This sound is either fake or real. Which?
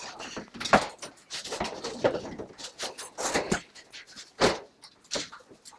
real